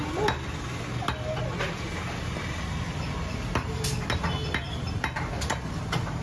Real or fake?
real